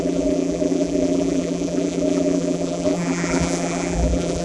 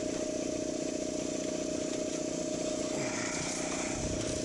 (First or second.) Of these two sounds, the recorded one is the second